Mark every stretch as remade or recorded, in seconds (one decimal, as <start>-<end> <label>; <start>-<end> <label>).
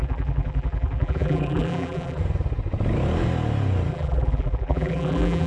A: 0.0-2.2 remade; 2.2-3.9 recorded; 3.9-5.5 remade